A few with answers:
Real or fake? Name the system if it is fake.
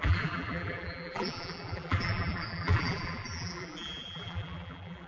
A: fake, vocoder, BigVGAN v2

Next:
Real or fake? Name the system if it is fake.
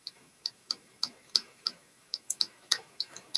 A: fake, autoencoder, DAC-VAE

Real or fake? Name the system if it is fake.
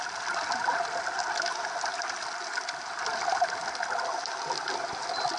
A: real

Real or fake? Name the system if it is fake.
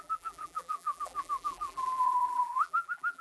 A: fake, vocoder, BigVGAN v2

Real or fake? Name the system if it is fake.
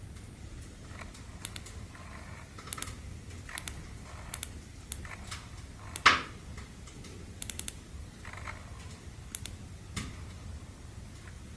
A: real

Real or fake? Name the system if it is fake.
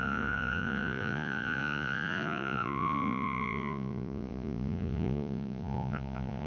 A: fake, vocoder, Vocos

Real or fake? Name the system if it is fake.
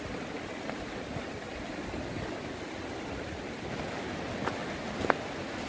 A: real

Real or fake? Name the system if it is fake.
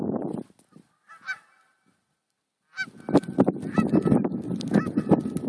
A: real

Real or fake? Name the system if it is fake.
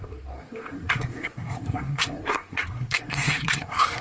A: fake, codec, SNAC